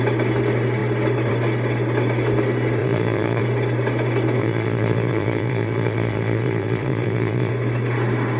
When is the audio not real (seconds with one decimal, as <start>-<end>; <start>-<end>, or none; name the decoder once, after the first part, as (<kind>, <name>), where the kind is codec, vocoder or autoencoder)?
2.8-3.4 (vocoder, Vocos); 4.4-7.5